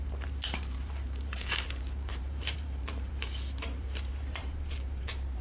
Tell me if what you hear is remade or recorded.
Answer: remade